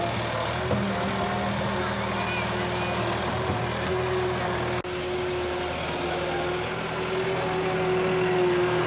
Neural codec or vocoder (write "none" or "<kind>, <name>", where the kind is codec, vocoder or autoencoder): none